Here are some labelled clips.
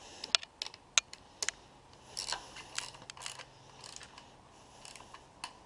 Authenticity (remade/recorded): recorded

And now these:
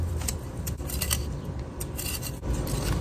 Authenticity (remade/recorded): remade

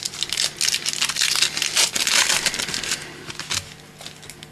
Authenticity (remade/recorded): recorded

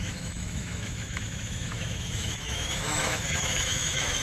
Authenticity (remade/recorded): remade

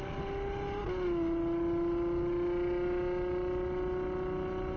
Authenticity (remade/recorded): recorded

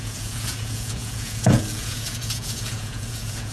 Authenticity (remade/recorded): remade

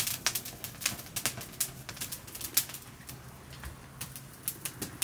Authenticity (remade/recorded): recorded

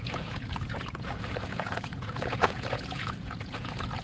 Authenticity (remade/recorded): remade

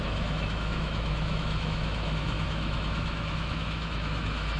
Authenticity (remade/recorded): remade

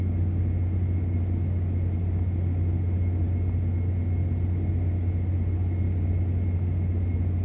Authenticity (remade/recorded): recorded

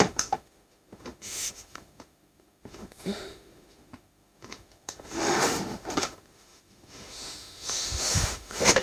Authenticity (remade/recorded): remade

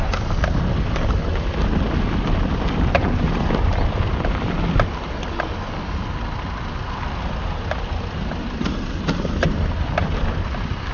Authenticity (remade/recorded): recorded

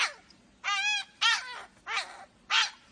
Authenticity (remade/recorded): recorded